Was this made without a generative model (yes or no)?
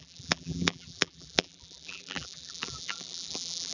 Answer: no